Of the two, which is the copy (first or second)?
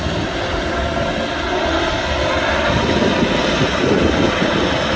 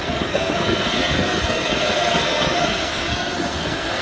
second